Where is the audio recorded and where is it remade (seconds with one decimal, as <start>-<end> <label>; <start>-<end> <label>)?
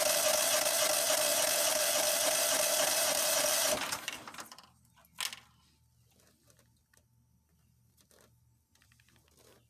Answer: 0.0-1.3 recorded; 1.3-5.0 remade; 5.0-9.7 recorded